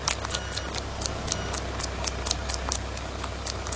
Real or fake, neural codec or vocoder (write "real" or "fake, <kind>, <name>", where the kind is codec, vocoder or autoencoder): real